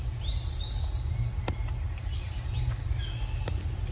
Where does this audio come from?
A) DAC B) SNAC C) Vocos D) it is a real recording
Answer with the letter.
D